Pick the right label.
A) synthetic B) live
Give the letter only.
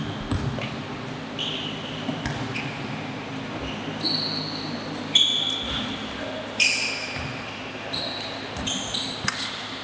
B